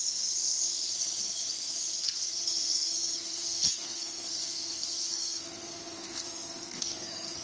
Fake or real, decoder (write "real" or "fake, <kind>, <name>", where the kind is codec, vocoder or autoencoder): fake, codec, SNAC